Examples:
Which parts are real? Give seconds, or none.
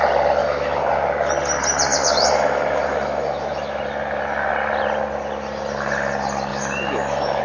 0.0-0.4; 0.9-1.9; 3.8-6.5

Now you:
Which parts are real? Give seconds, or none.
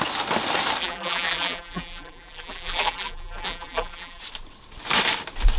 0.0-0.8; 4.2-5.6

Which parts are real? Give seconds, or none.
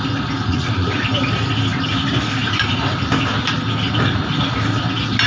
0.0-0.5; 1.0-5.3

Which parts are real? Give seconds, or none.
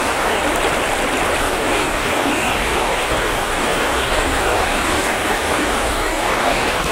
0.4-1.4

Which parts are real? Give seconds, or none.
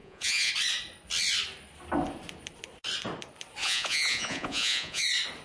0.5-3.6; 5.0-5.4